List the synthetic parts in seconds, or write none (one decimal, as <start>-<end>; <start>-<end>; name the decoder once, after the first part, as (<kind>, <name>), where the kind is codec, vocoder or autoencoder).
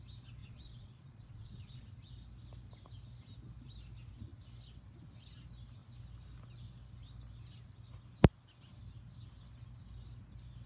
0.4-1.8 (vocoder, Vocos)